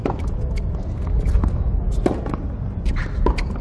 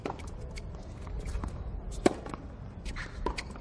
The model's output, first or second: second